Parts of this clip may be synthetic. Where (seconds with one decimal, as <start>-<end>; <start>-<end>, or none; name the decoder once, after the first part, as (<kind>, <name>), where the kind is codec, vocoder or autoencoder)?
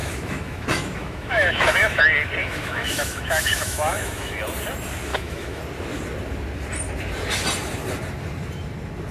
0.0-2.0 (autoencoder, DAC-VAE); 2.4-4.4; 5.1-5.6